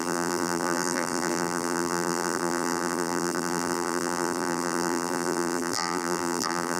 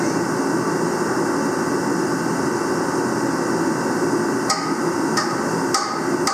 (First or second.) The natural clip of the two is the second